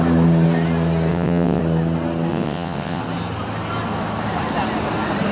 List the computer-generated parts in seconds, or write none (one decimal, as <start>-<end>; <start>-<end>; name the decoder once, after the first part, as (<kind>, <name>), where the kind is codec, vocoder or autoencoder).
1.1-1.6 (vocoder, WaveNeXt); 2.3-3.0